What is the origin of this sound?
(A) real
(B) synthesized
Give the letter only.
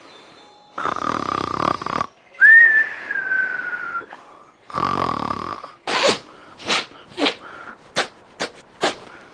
A